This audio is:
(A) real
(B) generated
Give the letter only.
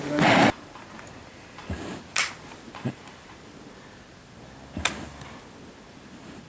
A